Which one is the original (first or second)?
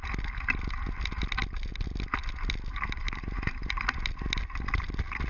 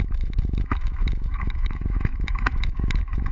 first